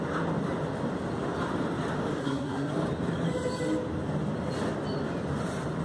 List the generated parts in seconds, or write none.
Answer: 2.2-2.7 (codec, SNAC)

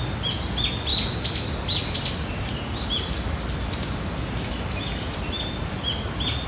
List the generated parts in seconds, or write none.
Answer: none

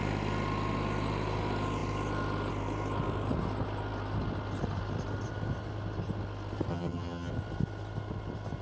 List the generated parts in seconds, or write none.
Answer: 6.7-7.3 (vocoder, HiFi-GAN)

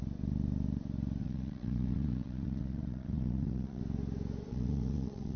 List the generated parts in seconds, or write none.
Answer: 1.2-3.8 (vocoder, WaveNeXt); 4.5-5.4